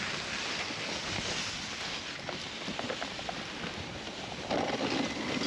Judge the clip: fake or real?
real